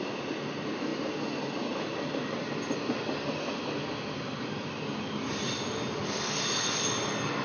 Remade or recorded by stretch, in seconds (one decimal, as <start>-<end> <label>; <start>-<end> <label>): 0.0-7.4 recorded